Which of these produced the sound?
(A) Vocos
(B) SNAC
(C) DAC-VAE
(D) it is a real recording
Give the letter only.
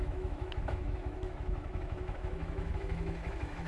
C